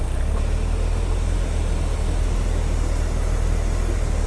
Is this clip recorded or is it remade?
recorded